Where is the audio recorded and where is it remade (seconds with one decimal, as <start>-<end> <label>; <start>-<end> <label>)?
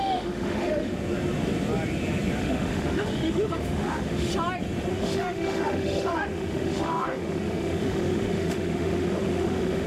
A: 0.0-0.9 remade; 0.9-2.4 recorded; 2.4-4.3 remade; 4.3-4.9 recorded; 4.9-9.9 remade